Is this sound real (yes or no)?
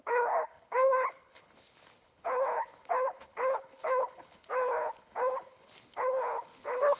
no